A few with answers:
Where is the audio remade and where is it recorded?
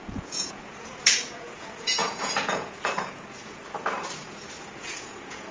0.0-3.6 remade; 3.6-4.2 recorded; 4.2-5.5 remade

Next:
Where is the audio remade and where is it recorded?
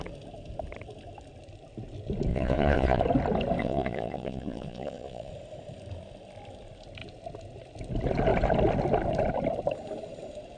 0.0-2.3 recorded; 2.3-3.0 remade; 3.0-3.6 recorded; 3.6-5.3 remade; 5.3-10.6 recorded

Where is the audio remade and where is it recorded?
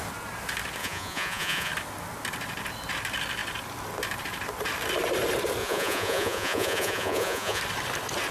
0.0-0.8 recorded; 0.8-1.7 remade; 1.7-5.6 recorded; 5.6-7.6 remade; 7.6-8.3 recorded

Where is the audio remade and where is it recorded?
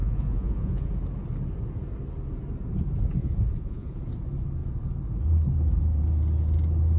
0.0-0.9 remade; 0.9-3.2 recorded; 3.2-4.0 remade; 4.0-7.0 recorded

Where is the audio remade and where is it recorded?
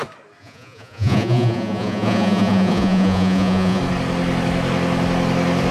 0.0-0.4 recorded; 0.4-3.8 remade; 3.8-5.7 recorded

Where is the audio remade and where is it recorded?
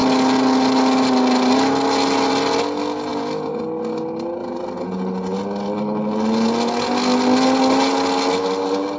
0.0-3.1 recorded; 3.1-3.6 remade; 3.6-4.4 recorded; 4.4-5.4 remade; 5.4-9.0 recorded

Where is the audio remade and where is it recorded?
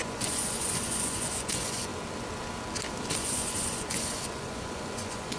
0.0-1.9 remade; 1.9-3.2 recorded; 3.2-5.4 remade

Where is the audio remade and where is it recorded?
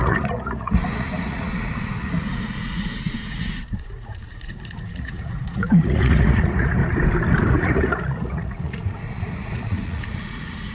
0.0-6.8 remade; 6.8-7.5 recorded; 7.5-10.7 remade